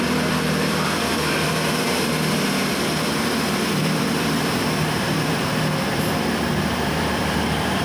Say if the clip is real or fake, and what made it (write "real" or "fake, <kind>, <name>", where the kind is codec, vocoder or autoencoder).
fake, vocoder, BigVGAN v2